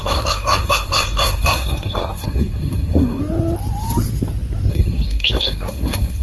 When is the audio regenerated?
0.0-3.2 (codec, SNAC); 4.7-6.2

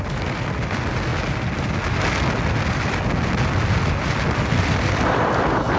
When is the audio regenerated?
none